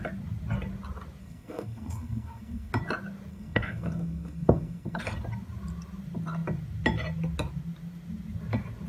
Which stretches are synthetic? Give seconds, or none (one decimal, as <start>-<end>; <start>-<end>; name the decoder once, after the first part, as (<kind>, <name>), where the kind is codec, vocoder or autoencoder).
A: 1.2-2.7 (codec, SNAC); 3.3-5.0